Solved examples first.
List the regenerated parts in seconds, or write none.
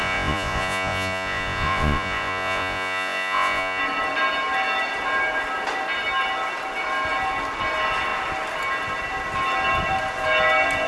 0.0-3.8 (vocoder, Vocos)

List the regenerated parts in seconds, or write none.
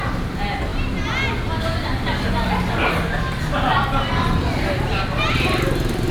none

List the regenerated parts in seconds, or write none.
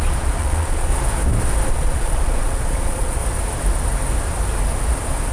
0.0-0.9 (vocoder, Vocos); 1.7-3.2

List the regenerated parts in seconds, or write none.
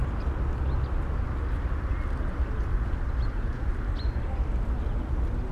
3.3-3.7 (vocoder, Vocos)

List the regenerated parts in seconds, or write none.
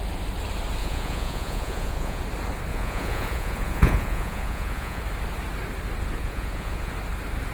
0.8-2.2 (vocoder, Vocos); 2.7-5.0; 6.2-6.9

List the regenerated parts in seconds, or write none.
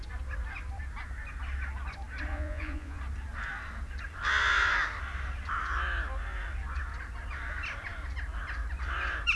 2.3-3.0 (vocoder, Vocos)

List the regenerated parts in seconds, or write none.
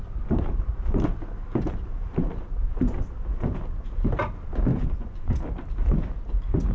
4.7-5.3 (vocoder, Vocos)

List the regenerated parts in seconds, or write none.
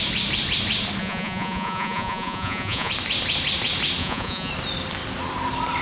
1.0-2.9 (vocoder, Vocos); 4.0-4.5